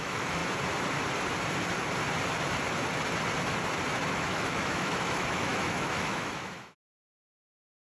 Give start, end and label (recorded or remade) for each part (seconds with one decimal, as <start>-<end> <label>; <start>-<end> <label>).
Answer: 0.0-0.4 remade; 0.4-4.1 recorded; 4.1-7.9 remade